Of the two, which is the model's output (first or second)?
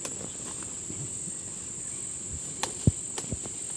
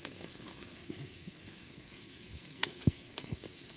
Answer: second